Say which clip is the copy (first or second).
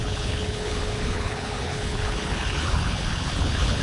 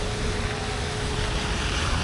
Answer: first